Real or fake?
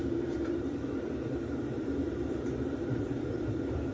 fake